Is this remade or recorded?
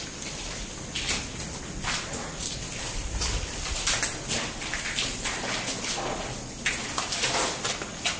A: recorded